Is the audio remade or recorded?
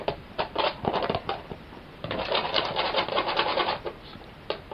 remade